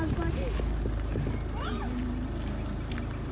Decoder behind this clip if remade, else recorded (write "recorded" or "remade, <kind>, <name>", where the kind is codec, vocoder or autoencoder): recorded